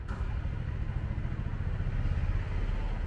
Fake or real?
real